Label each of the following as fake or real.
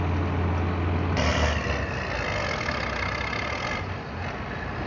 real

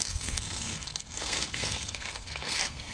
fake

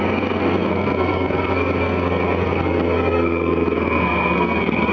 fake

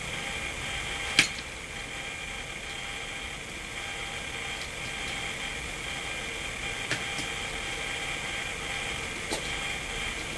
real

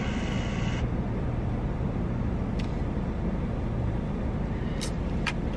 real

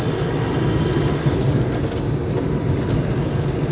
real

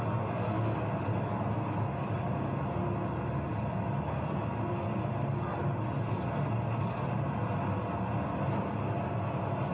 real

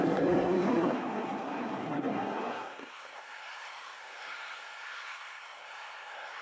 fake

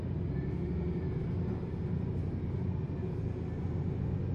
real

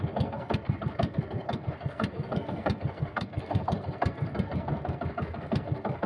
fake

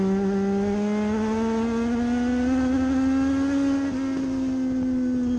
real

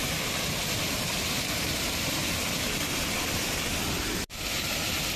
real